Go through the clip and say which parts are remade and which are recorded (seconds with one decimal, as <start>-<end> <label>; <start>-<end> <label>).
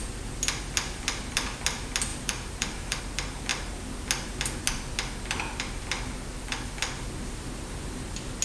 0.0-2.1 recorded; 2.1-3.0 remade; 3.0-8.4 recorded